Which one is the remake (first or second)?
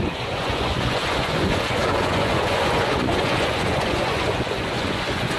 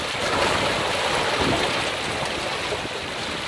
first